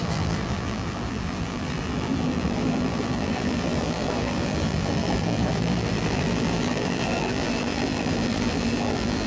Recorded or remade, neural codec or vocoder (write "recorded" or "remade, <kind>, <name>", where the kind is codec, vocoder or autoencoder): remade, vocoder, BigVGAN v2